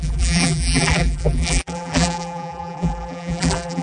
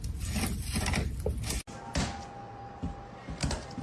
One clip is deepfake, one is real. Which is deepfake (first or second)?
first